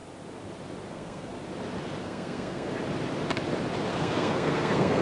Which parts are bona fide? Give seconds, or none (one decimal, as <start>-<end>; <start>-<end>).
0.0-0.9; 1.3-2.0; 2.7-3.9